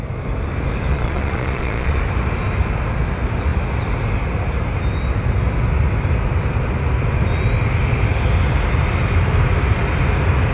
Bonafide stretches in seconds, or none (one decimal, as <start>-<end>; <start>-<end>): 0.0-0.9; 2.0-10.5